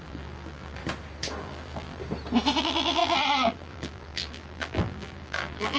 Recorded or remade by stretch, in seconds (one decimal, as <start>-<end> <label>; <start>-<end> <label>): 0.0-0.8 remade; 0.8-1.4 recorded; 1.4-2.0 remade; 2.0-2.6 recorded; 2.6-5.8 remade